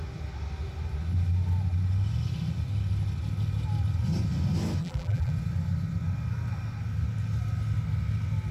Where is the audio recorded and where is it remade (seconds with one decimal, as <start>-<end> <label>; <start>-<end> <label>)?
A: 0.0-4.8 recorded; 4.8-5.3 remade; 5.3-8.5 recorded